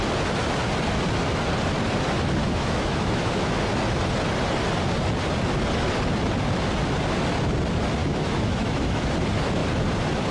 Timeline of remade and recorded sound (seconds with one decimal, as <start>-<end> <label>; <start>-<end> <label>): 0.0-2.4 recorded; 2.4-3.6 remade; 3.6-8.0 recorded; 8.0-9.1 remade; 9.1-10.3 recorded